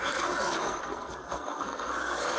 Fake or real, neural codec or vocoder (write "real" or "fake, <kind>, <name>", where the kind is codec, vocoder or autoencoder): fake, codec, SNAC